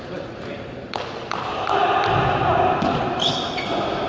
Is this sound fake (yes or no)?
yes